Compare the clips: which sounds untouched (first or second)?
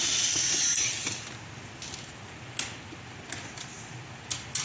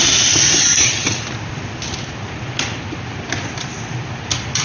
first